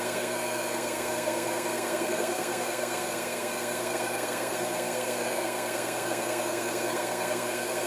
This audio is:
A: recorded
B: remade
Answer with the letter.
B